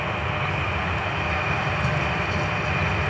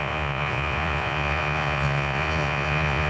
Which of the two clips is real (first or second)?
first